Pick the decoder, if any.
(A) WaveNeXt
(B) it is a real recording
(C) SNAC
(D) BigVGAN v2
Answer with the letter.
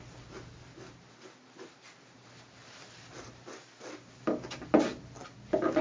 B